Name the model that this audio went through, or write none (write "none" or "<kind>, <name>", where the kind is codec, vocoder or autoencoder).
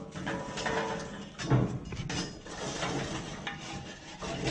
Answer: none